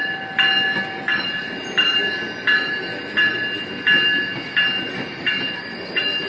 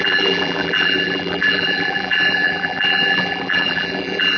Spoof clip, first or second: second